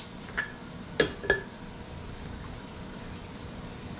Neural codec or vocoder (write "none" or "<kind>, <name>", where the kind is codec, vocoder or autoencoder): none